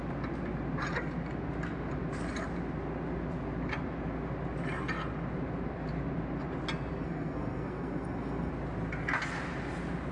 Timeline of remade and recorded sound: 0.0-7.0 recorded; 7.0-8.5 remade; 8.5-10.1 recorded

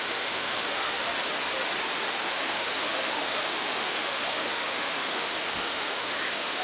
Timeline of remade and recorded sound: 0.0-1.1 remade; 1.1-2.1 recorded; 2.1-6.6 remade